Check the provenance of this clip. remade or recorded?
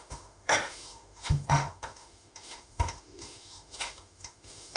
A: remade